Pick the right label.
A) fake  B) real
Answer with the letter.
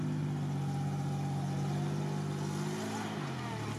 B